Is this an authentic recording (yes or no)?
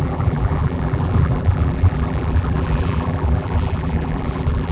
no